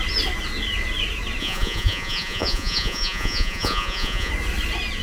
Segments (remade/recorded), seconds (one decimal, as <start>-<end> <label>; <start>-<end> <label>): 0.0-1.4 recorded; 1.4-4.3 remade; 4.3-5.0 recorded